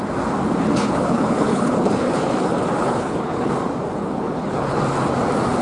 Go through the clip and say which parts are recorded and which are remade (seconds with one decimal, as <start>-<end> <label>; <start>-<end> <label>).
0.0-0.7 recorded; 0.7-3.5 remade; 3.5-4.0 recorded; 4.0-4.8 remade; 4.8-5.6 recorded